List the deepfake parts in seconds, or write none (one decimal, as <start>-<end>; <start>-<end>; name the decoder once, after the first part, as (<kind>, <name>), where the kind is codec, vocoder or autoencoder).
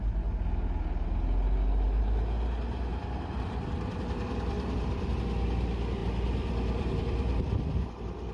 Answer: 2.9-5.1 (vocoder, BigVGAN v2); 6.0-7.9